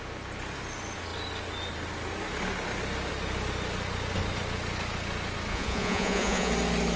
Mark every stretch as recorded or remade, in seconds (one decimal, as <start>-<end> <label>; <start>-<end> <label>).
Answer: 0.0-5.5 recorded; 5.5-6.5 remade; 6.5-7.0 recorded